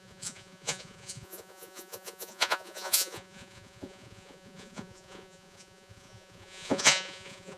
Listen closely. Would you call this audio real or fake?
fake